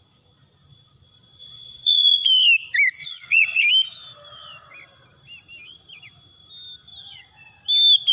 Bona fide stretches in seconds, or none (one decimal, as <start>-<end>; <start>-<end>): 0.0-1.4; 2.3-3.0; 3.6-8.1

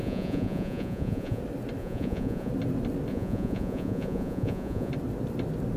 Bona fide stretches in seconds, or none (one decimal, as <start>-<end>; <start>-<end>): 1.4-1.8; 2.5-3.1; 4.9-5.8

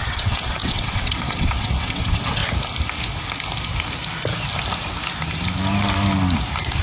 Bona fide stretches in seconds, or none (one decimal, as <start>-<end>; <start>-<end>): 2.4-6.8

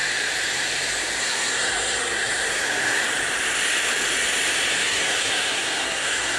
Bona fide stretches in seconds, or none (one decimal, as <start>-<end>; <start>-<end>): 0.0-1.2; 3.0-4.7

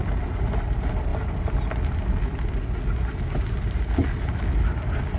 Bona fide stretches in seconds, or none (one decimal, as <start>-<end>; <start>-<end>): 0.0-5.2

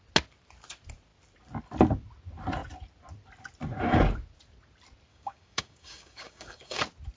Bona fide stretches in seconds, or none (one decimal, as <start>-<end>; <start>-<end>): 0.0-5.1; 6.8-7.2